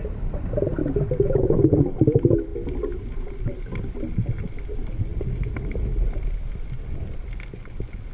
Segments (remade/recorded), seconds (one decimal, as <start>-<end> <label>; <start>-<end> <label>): 0.0-0.8 recorded; 0.8-1.8 remade; 1.8-8.1 recorded